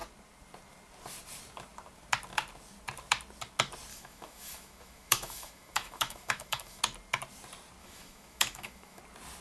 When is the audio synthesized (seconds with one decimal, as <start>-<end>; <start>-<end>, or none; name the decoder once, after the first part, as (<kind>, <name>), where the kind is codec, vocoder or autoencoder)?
3.9-6.8 (autoencoder, DAC-VAE); 7.8-9.0